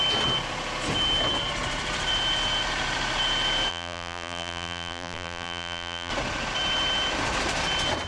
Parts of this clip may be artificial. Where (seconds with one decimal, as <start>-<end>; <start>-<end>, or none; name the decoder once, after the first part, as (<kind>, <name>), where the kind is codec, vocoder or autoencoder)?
3.7-6.1 (vocoder, BigVGAN v2)